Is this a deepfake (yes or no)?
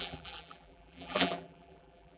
yes